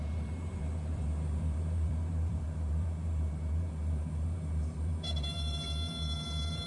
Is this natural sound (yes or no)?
no